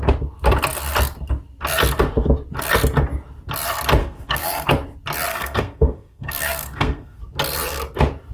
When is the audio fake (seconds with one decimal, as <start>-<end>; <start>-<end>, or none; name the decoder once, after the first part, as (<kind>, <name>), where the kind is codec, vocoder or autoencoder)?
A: 4.0-4.7 (codec, SNAC); 5.3-7.2